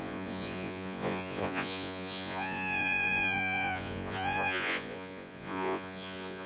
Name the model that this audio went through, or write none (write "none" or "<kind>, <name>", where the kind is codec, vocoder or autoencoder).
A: vocoder, Vocos